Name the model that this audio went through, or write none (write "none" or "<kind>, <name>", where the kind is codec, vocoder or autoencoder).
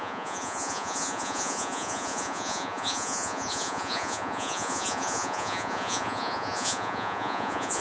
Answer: vocoder, Vocos